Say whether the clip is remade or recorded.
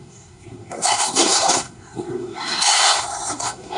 remade